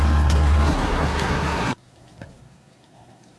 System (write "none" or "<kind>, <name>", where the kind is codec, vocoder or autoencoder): codec, SNAC